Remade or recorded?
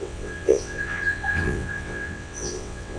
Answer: remade